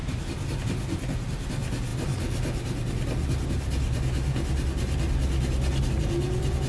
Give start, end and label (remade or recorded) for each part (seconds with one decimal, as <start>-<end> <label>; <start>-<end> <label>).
0.0-6.7 recorded